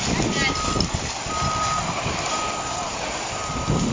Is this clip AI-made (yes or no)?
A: no